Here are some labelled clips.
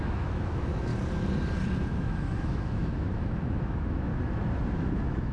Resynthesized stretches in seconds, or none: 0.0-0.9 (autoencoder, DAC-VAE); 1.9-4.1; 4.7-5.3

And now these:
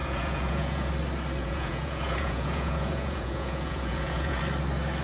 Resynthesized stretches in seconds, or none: 0.0-0.9 (vocoder, Vocos); 1.4-4.4

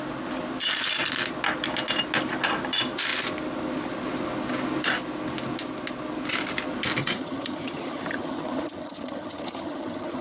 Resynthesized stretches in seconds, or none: 7.0-10.2 (vocoder, HiFi-GAN)

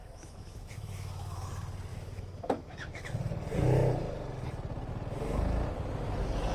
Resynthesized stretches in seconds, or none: 0.0-1.5 (autoencoder, DAC-VAE); 1.9-3.1

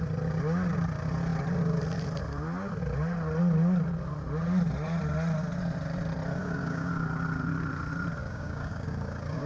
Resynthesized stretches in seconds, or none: 6.4-6.9 (codec, DAC); 8.2-9.5

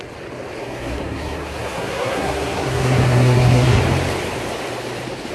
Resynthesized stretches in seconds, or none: 0.6-3.8 (codec, SNAC)